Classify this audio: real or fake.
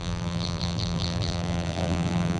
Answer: fake